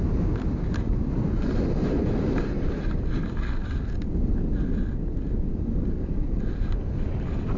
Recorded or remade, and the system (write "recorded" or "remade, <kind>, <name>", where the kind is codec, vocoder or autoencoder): recorded